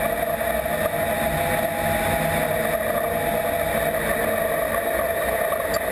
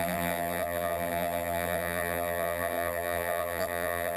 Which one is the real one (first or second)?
first